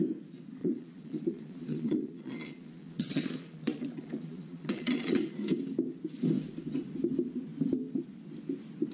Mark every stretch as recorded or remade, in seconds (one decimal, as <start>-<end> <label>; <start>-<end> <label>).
0.0-0.6 recorded; 0.6-5.3 remade; 5.3-8.9 recorded